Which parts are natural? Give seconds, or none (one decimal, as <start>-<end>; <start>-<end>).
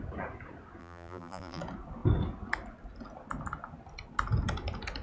0.0-0.8; 1.6-5.0